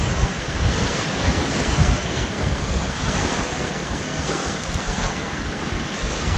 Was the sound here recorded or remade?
remade